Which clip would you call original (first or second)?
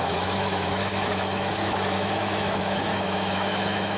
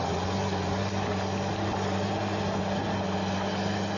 second